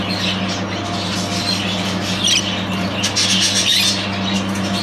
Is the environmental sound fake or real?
real